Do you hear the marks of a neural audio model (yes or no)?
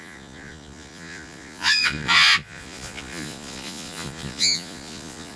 yes